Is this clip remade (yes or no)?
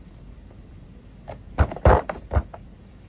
yes